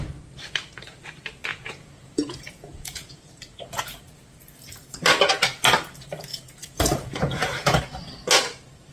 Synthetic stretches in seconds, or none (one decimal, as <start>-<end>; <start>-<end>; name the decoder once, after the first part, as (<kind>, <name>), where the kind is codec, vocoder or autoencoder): 1.5-3.2 (vocoder, Vocos); 6.3-7.8